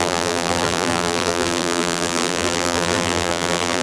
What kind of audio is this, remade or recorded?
remade